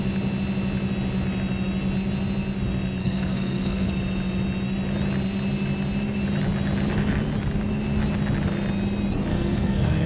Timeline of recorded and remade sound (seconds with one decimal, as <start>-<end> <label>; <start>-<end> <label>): 0.0-3.0 recorded; 3.0-3.9 remade; 3.9-9.3 recorded; 9.3-10.1 remade